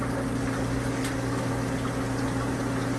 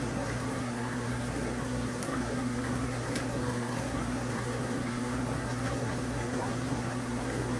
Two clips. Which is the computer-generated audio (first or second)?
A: second